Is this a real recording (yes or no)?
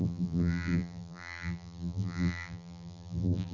no